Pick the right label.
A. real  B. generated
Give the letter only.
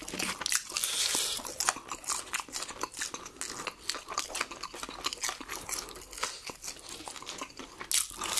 A